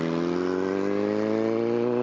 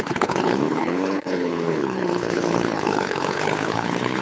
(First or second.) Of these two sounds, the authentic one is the first